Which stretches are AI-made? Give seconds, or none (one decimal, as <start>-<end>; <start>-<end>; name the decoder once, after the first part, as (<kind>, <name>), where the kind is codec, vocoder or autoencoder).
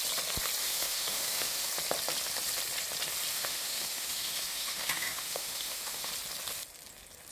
0.6-1.7 (autoencoder, DAC-VAE); 3.3-6.1